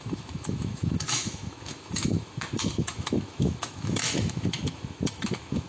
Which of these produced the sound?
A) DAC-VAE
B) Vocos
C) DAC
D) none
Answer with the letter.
A